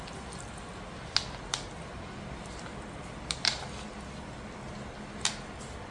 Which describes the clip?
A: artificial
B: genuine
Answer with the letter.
B